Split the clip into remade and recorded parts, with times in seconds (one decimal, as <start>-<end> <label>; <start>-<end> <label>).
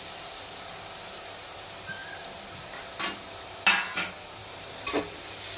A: 0.0-4.4 recorded; 4.4-5.0 remade; 5.0-5.6 recorded